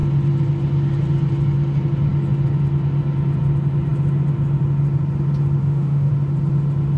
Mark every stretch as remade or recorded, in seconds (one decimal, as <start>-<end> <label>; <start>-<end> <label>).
0.0-5.6 recorded; 5.6-6.1 remade; 6.1-7.0 recorded

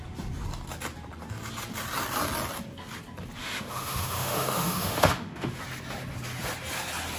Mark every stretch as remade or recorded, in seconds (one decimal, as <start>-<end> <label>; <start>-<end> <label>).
0.0-3.4 recorded; 3.4-5.6 remade; 5.6-7.2 recorded

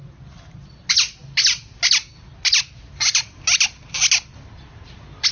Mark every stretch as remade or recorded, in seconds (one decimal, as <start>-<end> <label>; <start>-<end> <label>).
0.0-5.3 recorded

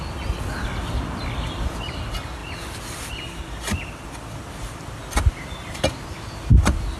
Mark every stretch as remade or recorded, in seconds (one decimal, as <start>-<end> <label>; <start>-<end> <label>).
0.0-7.0 recorded

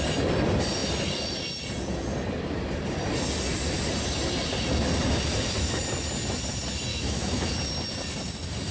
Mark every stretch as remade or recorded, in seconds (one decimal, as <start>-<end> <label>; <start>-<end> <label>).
0.0-6.9 recorded; 6.9-7.5 remade; 7.5-8.7 recorded

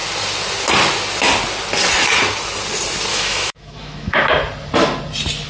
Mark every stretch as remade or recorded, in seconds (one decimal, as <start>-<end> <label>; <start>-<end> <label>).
0.0-3.1 recorded; 3.1-4.2 remade; 4.2-5.5 recorded

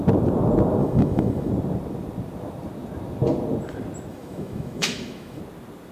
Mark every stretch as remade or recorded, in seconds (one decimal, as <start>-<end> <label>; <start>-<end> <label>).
0.0-0.8 recorded; 0.8-1.5 remade; 1.5-4.1 recorded; 4.1-5.4 remade; 5.4-5.9 recorded